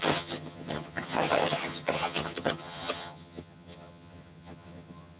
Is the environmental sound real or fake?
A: fake